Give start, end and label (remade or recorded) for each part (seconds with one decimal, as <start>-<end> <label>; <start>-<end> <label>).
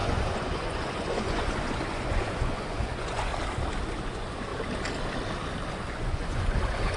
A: 0.0-3.3 remade; 3.3-4.1 recorded; 4.1-4.5 remade; 4.5-5.7 recorded; 5.7-7.0 remade